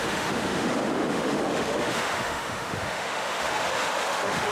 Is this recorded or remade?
remade